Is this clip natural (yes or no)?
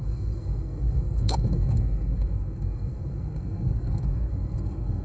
no